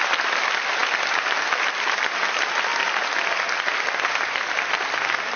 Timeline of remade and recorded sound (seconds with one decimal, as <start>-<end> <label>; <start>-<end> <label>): 0.0-2.7 remade; 2.7-4.1 recorded; 4.1-5.4 remade